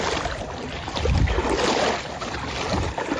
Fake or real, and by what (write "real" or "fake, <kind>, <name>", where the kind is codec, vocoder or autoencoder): real